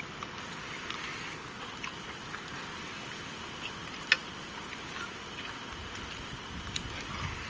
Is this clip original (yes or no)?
yes